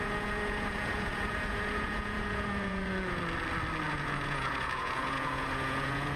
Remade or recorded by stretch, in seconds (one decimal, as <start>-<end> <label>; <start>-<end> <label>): 0.0-3.2 remade; 3.2-3.9 recorded; 3.9-6.2 remade